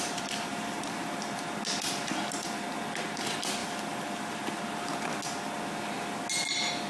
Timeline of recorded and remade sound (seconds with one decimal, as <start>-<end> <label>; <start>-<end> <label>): 0.0-0.5 recorded; 0.5-1.4 remade; 1.4-3.6 recorded; 3.6-4.6 remade; 4.6-6.9 recorded